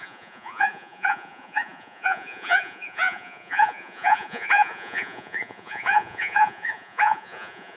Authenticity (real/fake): fake